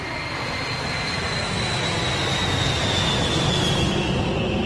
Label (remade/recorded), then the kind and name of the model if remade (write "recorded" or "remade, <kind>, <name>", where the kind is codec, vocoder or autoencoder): recorded